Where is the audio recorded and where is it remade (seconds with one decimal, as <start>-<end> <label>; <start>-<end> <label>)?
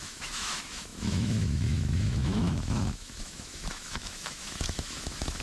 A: 0.0-5.4 remade